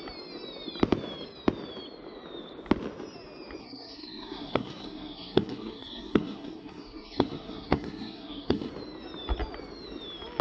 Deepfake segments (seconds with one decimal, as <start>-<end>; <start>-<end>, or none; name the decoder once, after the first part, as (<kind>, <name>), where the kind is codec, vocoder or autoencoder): 3.6-8.7 (codec, SNAC)